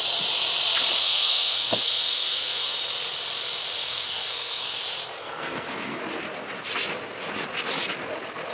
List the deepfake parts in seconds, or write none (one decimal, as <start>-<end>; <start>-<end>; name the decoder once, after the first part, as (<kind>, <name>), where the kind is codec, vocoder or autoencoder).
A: 1.0-2.7 (codec, SNAC); 3.8-4.8; 5.2-6.0